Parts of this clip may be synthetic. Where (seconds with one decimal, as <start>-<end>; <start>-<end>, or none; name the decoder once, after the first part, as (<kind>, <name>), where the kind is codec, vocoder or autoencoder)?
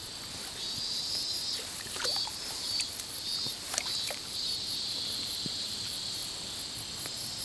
0.8-6.2 (vocoder, BigVGAN v2); 7.0-7.4